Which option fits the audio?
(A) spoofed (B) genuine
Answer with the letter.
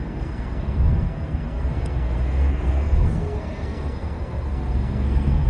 A